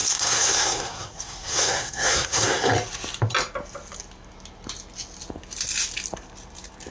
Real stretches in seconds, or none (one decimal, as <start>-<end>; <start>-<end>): 2.7-6.9